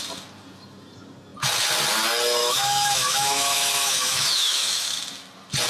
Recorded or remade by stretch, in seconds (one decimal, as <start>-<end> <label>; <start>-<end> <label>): 0.0-2.4 recorded; 2.4-5.0 remade; 5.0-5.7 recorded